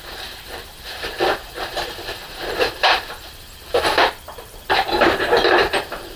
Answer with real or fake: fake